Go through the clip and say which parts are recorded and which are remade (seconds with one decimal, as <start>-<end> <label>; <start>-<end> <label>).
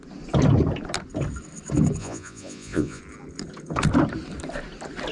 0.0-2.0 recorded; 2.0-3.0 remade; 3.0-5.1 recorded